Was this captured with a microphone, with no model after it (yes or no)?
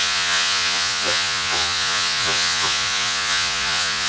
no